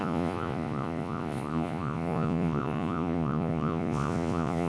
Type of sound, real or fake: fake